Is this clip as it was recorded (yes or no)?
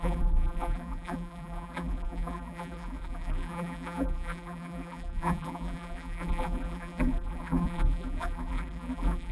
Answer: no